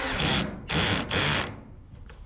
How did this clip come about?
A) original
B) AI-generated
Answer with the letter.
A